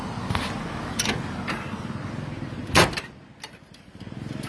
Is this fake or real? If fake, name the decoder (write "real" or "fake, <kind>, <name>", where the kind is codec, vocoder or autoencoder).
real